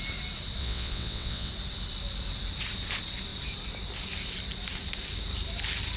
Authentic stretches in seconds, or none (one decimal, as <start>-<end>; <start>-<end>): 0.0-0.6; 1.5-6.0

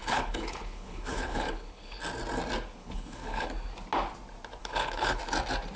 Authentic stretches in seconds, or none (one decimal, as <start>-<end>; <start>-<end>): 2.0-2.8; 3.5-4.6; 5.2-5.8

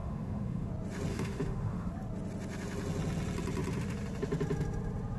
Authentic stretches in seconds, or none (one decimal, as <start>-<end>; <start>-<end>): 0.7-1.1; 1.9-5.2